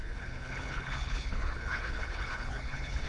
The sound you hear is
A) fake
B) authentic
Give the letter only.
A